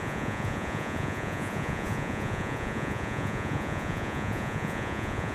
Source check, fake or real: fake